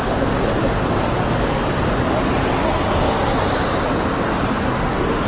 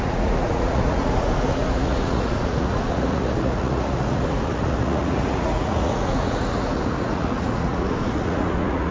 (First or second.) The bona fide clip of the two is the first